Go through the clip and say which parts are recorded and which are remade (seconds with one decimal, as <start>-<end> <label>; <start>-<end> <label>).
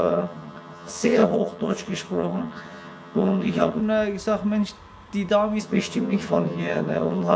0.0-3.8 remade; 3.8-5.6 recorded; 5.6-7.4 remade